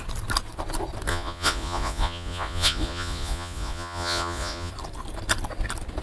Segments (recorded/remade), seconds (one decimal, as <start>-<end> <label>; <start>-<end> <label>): 0.0-1.1 recorded; 1.1-4.7 remade; 4.7-6.0 recorded